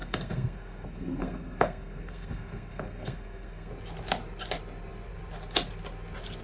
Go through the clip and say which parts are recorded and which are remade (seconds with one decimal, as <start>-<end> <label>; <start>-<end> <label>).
0.0-3.7 remade; 3.7-6.4 recorded